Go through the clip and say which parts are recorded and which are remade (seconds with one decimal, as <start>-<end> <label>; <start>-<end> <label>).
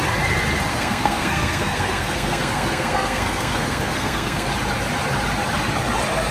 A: 0.0-0.7 recorded; 0.7-4.5 remade; 4.5-6.3 recorded